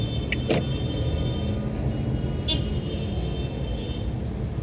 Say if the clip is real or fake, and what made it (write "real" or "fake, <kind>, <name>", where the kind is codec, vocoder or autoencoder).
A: real